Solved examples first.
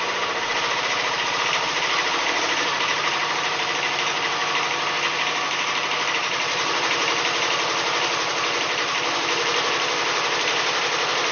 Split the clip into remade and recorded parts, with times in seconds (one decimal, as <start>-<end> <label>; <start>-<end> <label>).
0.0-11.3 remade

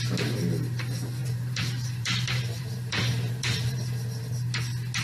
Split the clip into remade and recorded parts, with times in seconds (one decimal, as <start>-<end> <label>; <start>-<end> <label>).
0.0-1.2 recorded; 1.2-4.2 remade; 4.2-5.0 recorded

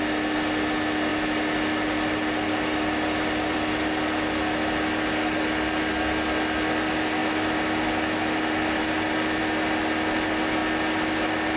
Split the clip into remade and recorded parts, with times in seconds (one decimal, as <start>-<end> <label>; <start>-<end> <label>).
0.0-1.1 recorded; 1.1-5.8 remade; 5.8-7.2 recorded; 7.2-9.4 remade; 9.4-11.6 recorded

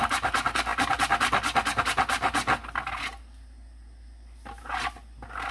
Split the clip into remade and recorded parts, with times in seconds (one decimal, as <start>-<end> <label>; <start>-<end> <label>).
0.0-5.5 recorded